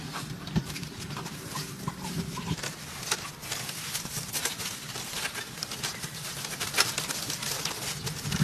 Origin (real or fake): real